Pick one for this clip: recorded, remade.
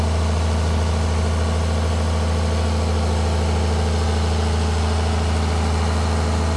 recorded